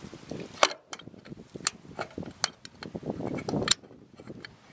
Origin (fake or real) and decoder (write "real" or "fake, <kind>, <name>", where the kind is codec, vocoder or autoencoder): real